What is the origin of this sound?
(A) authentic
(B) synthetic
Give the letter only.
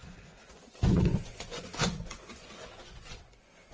B